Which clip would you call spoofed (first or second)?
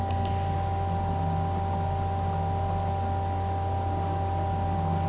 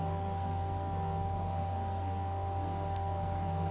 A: second